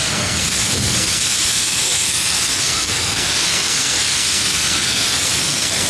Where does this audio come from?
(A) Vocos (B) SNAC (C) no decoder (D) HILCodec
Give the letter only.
B